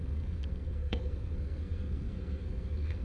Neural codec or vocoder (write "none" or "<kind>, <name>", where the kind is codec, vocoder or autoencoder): codec, SNAC